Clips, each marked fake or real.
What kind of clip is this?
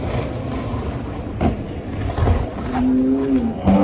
real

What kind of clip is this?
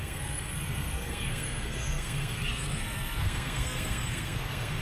fake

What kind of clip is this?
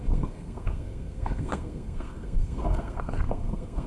fake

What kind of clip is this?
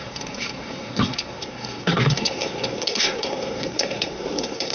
fake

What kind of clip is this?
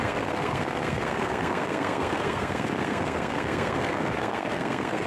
fake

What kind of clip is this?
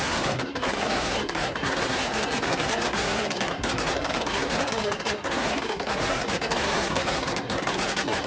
fake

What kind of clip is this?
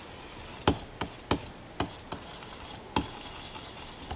real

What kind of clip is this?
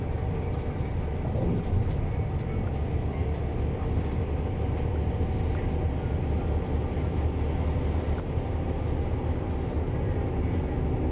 real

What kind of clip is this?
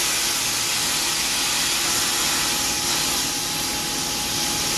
real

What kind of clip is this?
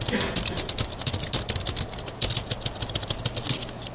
real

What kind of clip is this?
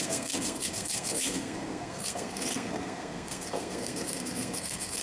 fake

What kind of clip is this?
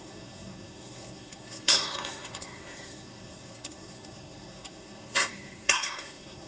fake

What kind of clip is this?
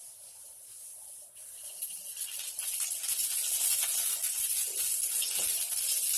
real